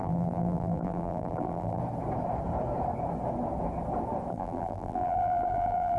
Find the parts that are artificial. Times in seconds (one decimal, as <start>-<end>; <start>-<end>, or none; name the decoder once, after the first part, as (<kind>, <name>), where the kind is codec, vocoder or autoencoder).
0.0-1.8 (vocoder, BigVGAN v2); 4.3-6.0